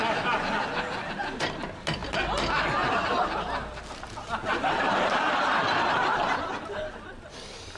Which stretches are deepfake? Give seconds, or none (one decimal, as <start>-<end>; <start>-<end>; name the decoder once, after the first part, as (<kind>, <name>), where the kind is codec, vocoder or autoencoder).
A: none